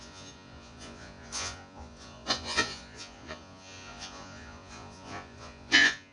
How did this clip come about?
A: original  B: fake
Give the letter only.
B